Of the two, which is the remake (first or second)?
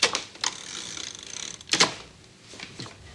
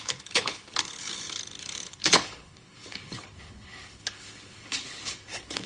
second